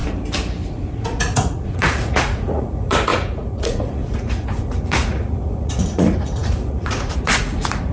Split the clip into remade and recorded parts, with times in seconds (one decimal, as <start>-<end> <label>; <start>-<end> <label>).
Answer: 0.0-0.7 recorded; 0.7-7.9 remade